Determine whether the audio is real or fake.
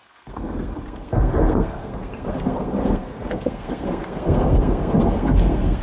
fake